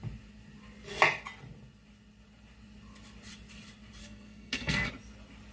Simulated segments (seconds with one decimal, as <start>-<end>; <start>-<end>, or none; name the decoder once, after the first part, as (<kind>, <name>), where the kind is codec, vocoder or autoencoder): 4.0-4.9 (codec, SNAC)